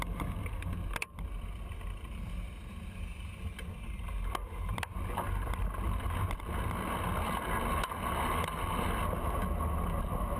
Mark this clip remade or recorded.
recorded